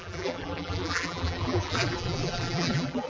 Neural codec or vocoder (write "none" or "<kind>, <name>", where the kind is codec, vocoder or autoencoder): vocoder, BigVGAN v2